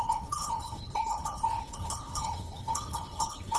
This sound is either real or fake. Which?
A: fake